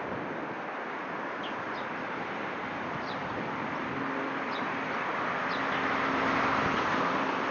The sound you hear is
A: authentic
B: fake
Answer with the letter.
A